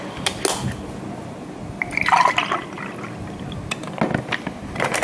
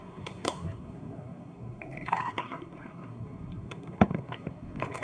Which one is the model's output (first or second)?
second